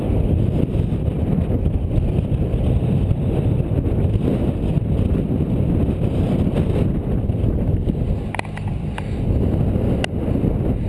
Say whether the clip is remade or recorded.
recorded